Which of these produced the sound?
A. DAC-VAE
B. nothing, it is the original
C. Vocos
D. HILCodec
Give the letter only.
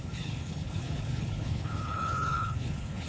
D